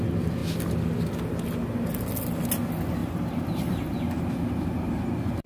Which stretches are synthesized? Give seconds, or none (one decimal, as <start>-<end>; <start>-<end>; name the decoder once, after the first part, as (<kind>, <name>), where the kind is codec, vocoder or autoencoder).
3.0-4.9 (vocoder, BigVGAN v2)